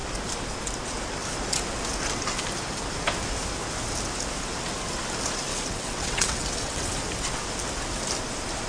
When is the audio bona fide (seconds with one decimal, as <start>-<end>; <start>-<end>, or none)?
0.0-5.5; 6.9-8.7